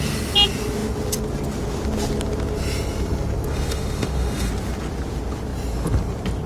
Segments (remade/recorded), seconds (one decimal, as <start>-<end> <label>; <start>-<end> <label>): 0.0-3.5 recorded; 3.5-4.5 remade; 4.5-6.5 recorded